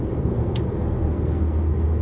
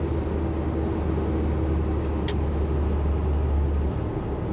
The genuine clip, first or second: second